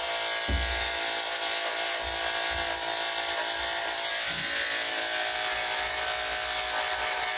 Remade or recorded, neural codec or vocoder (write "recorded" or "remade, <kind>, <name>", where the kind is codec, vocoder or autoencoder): recorded